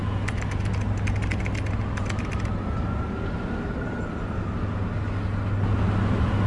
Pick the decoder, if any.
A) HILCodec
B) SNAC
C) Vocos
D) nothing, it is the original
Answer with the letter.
D